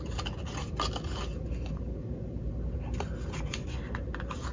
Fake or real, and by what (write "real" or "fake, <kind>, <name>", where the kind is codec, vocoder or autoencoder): real